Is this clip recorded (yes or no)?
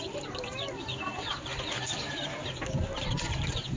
no